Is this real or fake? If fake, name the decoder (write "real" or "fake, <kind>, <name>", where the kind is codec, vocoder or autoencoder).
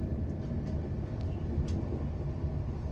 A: real